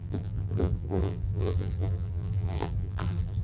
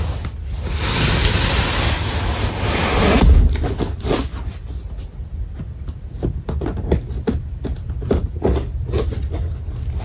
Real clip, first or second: second